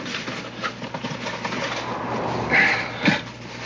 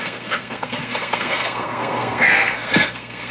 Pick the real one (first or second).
first